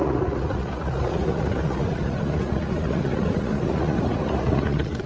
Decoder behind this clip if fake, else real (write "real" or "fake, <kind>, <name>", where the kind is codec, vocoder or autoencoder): fake, vocoder, Vocos